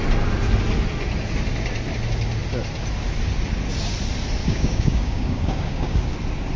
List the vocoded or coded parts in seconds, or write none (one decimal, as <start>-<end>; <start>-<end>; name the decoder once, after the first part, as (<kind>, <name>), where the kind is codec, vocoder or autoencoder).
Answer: 4.4-6.1 (codec, DAC)